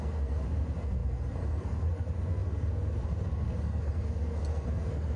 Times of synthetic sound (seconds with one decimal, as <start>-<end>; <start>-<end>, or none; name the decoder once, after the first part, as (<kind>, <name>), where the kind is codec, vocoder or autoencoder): 0.0-5.2 (codec, SNAC)